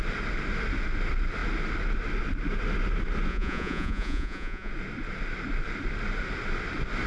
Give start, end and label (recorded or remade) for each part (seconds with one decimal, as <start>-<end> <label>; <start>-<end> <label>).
0.0-3.3 recorded; 3.3-4.7 remade; 4.7-7.1 recorded